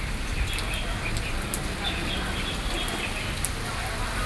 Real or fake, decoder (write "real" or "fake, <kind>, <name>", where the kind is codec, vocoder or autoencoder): real